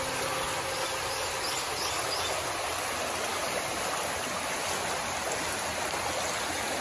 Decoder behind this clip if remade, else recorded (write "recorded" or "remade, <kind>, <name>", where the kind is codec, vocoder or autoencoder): recorded